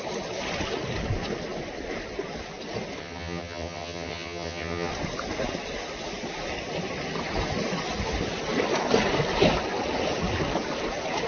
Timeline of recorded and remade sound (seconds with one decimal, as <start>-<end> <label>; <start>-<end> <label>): 0.0-3.0 recorded; 3.0-4.9 remade; 4.9-11.3 recorded